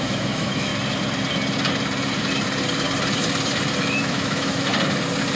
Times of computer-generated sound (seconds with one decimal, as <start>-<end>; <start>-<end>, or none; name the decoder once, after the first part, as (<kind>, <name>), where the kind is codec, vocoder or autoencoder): 0.0-0.7 (autoencoder, DAC-VAE); 3.8-4.7